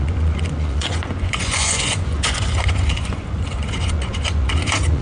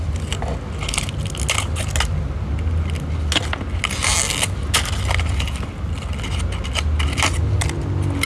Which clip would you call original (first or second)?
second